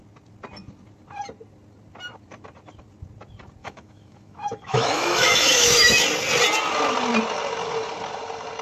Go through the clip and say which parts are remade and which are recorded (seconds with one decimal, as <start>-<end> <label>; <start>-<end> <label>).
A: 0.0-3.6 recorded; 3.6-6.0 remade; 6.0-8.6 recorded